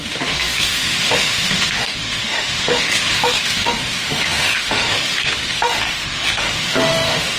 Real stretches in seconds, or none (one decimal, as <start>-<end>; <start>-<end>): none

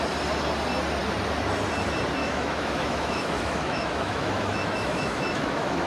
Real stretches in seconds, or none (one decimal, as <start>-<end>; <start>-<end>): 0.0-2.2